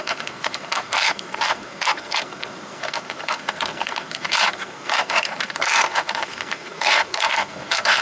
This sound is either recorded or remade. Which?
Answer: remade